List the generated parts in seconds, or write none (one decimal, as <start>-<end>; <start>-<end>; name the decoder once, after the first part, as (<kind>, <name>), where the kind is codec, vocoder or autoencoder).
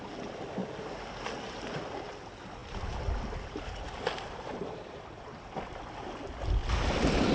0.6-1.2 (vocoder, BigVGAN v2); 2.6-5.2; 6.6-7.3